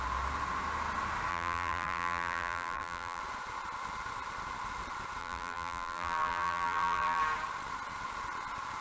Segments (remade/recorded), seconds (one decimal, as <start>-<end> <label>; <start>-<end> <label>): 0.0-1.3 recorded; 1.3-3.2 remade; 3.2-5.2 recorded; 5.2-7.2 remade; 7.2-8.8 recorded